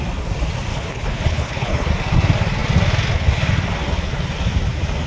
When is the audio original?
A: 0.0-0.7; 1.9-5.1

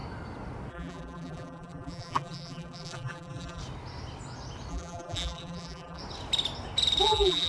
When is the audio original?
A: 0.0-0.7; 3.6-4.7; 6.0-7.0